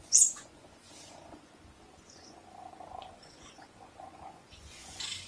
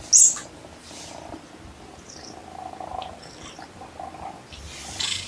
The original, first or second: second